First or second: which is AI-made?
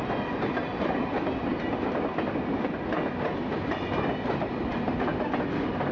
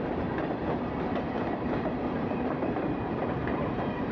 second